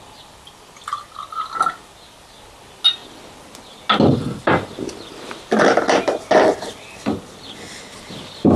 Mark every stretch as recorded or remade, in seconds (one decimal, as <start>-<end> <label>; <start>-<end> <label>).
0.0-8.6 recorded